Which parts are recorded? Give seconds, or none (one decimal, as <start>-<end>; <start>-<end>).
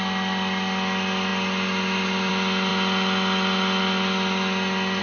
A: 0.0-5.0